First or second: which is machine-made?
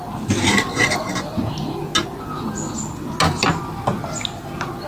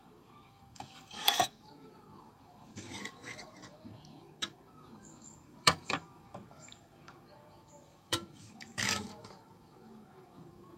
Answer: second